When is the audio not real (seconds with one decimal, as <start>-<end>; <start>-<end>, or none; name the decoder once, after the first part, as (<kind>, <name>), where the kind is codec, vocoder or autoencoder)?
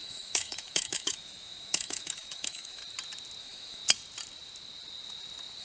0.0-2.8 (autoencoder, DAC-VAE); 3.4-3.8